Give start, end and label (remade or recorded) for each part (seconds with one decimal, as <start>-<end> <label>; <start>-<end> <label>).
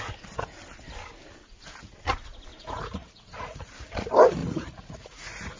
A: 0.0-2.5 recorded; 2.5-3.7 remade; 3.7-4.4 recorded; 4.4-5.6 remade